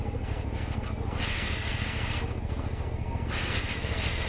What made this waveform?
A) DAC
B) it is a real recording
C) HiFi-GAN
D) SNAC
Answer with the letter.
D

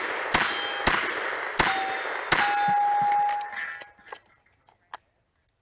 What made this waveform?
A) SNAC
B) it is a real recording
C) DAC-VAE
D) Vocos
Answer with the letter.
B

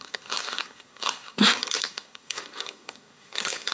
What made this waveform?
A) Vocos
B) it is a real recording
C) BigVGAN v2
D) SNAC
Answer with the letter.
D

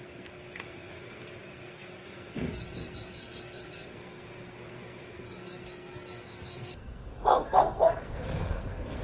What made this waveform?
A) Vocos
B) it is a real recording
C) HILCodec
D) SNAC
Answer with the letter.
D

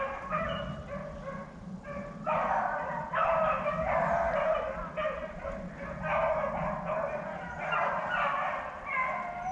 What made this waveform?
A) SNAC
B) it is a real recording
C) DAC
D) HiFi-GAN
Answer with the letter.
B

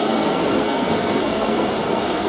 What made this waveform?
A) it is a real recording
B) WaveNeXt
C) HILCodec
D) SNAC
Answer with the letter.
D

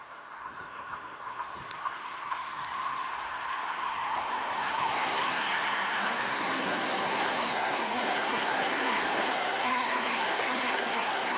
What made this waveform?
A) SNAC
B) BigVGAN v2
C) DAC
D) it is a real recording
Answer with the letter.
A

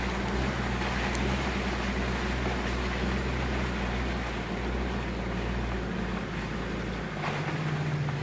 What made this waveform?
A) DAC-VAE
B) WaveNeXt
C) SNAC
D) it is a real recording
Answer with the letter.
D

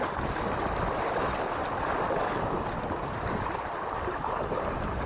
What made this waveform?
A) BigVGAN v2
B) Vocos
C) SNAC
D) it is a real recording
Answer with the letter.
D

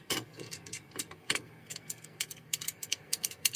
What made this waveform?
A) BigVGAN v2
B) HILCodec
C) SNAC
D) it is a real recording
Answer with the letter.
C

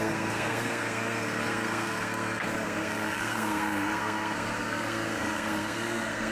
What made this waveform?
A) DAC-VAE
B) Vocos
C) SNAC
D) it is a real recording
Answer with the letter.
C